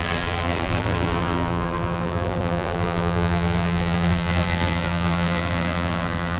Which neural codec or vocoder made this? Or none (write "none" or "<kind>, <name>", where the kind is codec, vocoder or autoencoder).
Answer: vocoder, BigVGAN v2